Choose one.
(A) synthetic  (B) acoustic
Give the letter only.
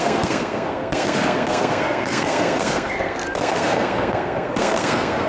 A